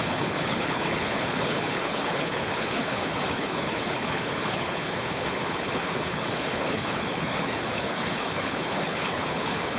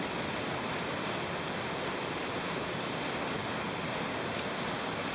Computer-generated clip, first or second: first